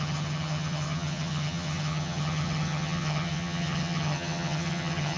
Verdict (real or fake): fake